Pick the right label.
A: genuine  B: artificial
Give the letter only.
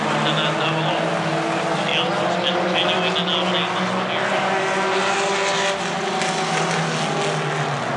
A